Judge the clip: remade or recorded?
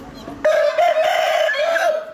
recorded